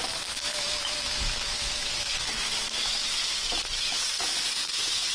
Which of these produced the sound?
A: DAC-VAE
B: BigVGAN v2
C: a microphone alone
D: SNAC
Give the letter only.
A